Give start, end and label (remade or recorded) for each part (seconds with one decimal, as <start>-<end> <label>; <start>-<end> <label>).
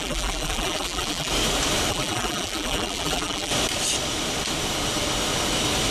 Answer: 0.0-1.3 remade; 1.3-1.9 recorded; 1.9-3.5 remade; 3.5-5.9 recorded